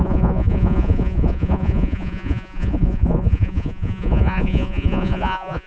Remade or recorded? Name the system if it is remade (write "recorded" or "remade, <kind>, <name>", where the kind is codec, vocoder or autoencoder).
remade, vocoder, Vocos